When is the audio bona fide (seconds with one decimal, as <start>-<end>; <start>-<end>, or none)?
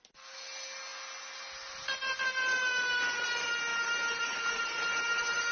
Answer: 0.0-3.7